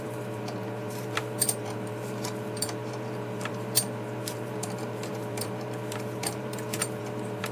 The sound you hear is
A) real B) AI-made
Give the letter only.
B